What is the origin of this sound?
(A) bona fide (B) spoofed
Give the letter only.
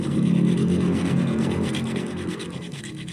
B